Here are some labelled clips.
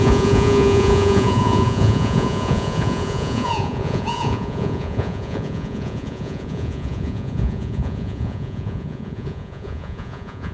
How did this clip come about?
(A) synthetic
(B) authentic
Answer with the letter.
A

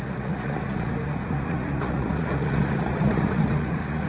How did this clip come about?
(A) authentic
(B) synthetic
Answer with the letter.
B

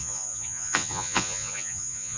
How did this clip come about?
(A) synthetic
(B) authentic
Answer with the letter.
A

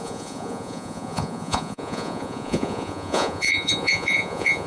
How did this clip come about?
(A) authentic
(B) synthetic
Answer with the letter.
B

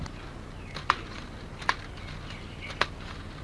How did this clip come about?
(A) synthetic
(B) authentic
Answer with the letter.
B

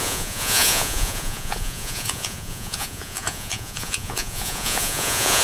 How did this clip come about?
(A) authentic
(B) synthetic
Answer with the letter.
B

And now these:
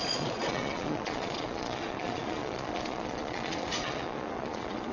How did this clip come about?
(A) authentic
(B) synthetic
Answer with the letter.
B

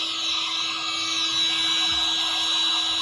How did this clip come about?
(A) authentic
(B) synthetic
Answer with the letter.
A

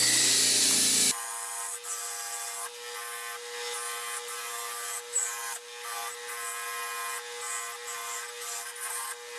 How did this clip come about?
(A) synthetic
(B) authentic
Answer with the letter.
B